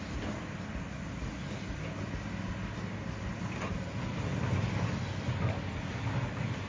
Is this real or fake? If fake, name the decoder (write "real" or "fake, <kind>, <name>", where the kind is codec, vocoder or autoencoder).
real